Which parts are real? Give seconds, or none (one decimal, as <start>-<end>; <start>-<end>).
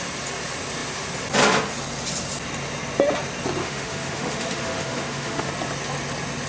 0.0-3.6; 5.5-6.5